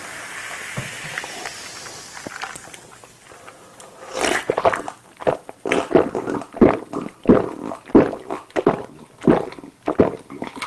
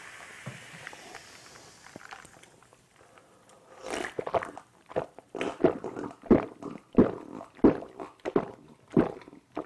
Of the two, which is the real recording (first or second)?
first